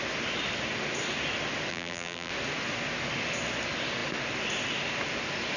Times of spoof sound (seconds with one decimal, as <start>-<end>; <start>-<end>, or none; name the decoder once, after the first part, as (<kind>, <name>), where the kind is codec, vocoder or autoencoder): 1.7-2.3 (vocoder, BigVGAN v2)